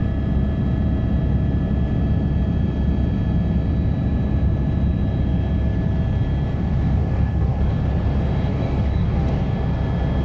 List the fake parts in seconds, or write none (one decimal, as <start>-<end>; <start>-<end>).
7.0-7.6; 8.5-9.3